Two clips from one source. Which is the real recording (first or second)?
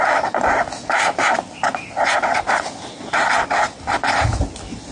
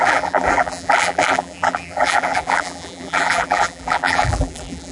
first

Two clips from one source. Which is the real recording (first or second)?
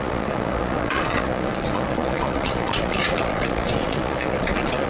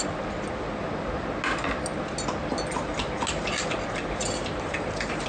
second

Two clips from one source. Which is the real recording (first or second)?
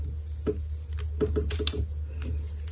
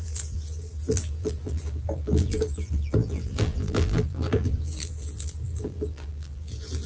first